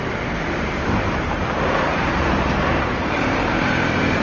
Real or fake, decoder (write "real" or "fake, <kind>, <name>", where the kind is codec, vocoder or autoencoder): fake, vocoder, BigVGAN v2